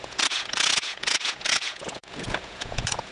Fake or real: fake